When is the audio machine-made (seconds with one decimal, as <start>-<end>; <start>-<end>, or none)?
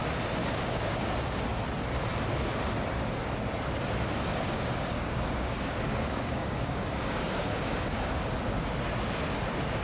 0.4-1.4; 4.3-8.1